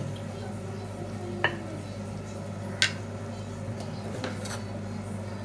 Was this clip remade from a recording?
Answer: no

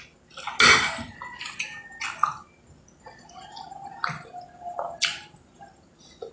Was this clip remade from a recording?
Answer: no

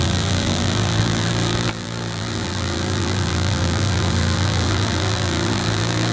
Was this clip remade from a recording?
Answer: yes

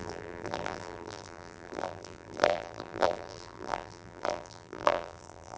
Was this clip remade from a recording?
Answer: yes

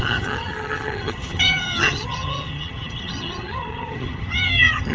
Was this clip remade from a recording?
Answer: yes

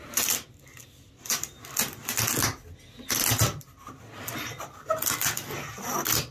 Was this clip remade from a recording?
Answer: no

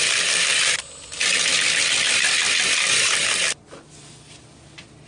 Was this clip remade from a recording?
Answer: no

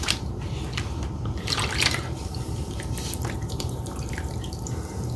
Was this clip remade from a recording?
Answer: yes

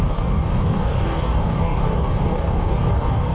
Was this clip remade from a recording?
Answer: yes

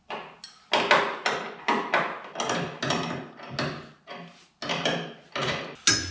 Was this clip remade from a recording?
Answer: no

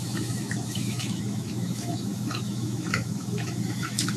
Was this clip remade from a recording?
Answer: yes